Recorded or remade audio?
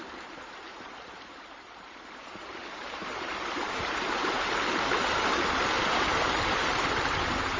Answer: remade